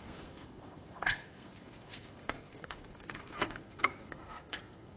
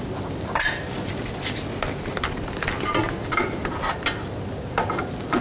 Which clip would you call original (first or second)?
second